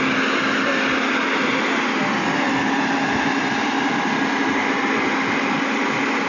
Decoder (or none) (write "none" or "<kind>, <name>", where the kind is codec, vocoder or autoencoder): none